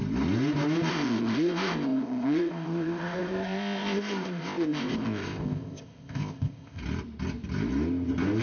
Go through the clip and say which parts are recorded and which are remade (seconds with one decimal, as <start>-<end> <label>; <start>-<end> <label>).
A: 0.0-0.9 recorded; 0.9-6.8 remade; 6.8-8.4 recorded